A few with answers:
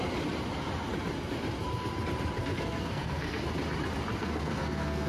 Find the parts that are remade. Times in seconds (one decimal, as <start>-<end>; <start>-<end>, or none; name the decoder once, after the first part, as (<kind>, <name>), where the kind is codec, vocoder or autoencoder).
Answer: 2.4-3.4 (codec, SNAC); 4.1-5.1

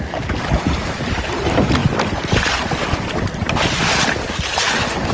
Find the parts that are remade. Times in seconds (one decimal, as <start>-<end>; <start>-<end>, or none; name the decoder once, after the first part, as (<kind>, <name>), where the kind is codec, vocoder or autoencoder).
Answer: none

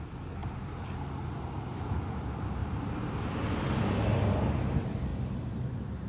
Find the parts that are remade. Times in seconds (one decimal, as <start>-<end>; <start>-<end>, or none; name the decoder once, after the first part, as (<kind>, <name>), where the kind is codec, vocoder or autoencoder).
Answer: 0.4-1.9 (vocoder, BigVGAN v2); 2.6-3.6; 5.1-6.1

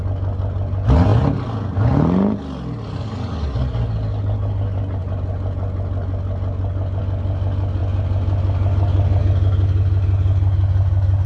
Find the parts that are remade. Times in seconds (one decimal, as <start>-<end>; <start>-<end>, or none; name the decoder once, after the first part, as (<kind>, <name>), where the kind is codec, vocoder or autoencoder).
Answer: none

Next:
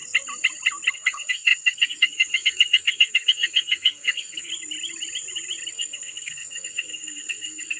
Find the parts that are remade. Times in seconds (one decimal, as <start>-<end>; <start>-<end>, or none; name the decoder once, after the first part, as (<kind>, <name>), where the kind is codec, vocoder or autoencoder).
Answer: 0.9-4.5 (codec, SNAC); 5.7-7.8

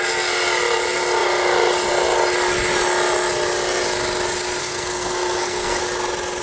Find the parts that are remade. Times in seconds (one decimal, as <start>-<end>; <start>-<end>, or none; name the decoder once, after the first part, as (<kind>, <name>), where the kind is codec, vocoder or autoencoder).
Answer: 4.6-5.8 (codec, SNAC)